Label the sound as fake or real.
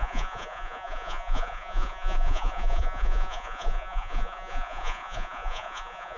fake